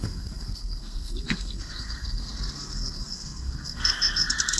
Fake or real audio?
fake